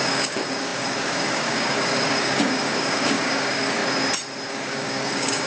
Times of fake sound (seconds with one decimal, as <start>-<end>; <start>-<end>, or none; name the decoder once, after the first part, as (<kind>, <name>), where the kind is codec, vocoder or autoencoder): 0.0-3.8 (codec, DAC); 4.5-5.5